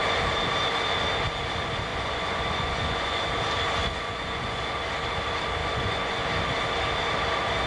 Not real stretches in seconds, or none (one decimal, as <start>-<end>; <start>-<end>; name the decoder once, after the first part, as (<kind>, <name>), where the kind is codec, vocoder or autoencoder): 1.9-3.2 (vocoder, Vocos); 3.8-4.6; 5.6-6.2